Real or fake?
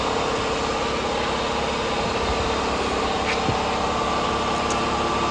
real